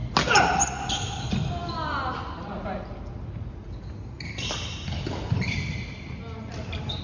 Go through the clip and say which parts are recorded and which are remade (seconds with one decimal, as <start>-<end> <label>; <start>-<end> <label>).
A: 0.0-7.0 recorded